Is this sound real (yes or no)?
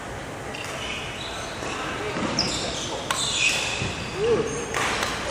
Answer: yes